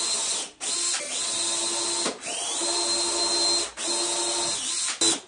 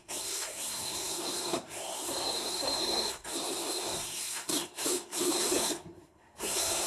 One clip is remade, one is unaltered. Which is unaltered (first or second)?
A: first